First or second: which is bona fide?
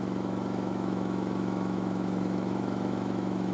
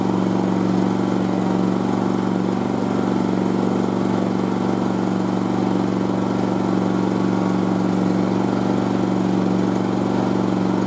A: second